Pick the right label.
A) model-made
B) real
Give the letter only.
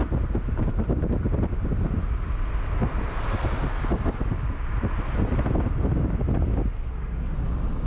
B